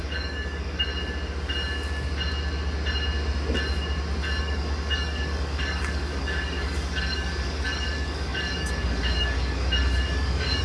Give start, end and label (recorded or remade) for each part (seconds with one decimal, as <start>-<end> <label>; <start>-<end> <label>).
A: 0.0-0.9 remade; 0.9-4.4 recorded; 4.4-10.6 remade